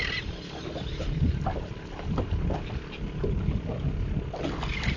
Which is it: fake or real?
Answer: real